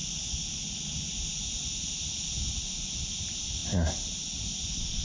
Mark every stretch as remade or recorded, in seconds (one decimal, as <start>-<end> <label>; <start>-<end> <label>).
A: 0.0-5.0 recorded